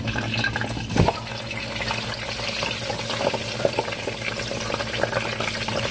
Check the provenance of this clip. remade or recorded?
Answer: recorded